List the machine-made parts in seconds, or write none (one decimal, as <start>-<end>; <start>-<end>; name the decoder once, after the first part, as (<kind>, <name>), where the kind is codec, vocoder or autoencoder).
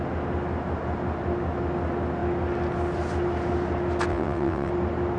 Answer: 4.1-4.7 (vocoder, WaveNeXt)